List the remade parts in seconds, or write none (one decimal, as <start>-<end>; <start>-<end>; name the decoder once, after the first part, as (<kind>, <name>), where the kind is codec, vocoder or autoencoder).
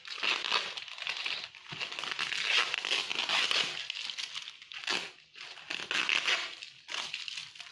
none